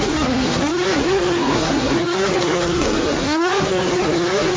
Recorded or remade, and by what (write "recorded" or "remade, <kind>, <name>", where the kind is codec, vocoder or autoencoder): remade, codec, SNAC